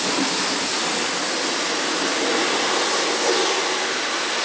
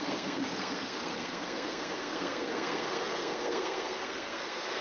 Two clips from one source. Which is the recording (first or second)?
first